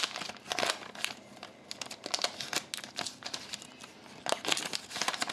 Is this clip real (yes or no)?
yes